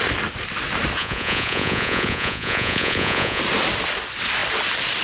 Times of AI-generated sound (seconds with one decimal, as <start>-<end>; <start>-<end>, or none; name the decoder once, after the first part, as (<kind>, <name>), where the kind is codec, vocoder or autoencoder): 1.0-3.4 (vocoder, Vocos)